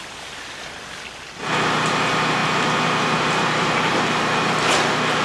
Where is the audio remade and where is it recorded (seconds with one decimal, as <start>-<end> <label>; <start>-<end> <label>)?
0.0-5.2 recorded